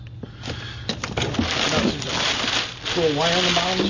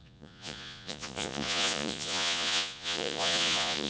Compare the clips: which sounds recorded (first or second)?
first